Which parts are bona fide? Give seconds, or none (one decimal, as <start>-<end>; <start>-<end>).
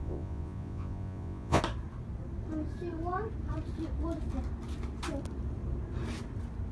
1.6-6.7